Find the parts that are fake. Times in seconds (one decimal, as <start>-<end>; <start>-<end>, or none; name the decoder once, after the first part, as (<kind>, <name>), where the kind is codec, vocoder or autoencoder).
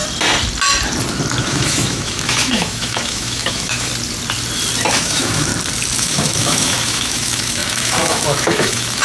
1.4-3.9 (autoencoder, DAC-VAE); 4.9-5.5; 6.0-9.0